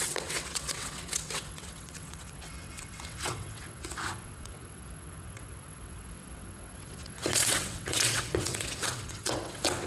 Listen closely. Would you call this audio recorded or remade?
remade